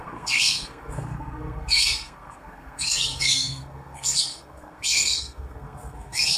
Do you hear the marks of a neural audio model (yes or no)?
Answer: yes